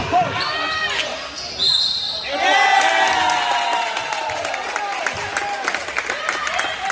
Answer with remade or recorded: recorded